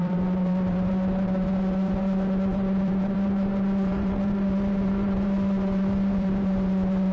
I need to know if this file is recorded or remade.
remade